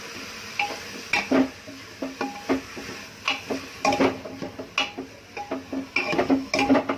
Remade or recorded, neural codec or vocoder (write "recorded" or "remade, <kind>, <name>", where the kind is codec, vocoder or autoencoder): recorded